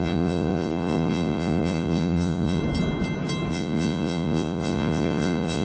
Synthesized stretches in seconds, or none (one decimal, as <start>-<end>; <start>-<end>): 0.0-2.6; 3.5-5.6

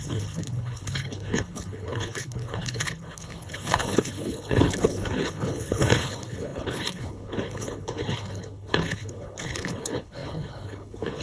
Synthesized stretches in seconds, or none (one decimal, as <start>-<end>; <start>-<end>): 0.0-11.2

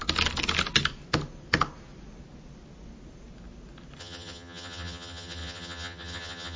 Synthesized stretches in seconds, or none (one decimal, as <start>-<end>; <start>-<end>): 4.0-6.6